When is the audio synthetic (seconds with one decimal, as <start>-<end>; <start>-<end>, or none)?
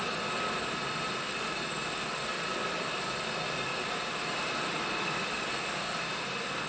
none